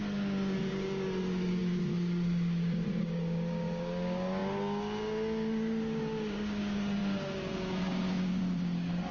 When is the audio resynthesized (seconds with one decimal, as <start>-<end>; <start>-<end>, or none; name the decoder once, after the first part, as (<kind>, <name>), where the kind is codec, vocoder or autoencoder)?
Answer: 0.0-9.1 (codec, DAC)